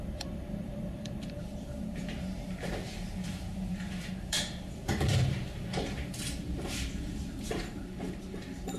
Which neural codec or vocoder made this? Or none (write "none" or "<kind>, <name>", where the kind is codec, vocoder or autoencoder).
vocoder, BigVGAN v2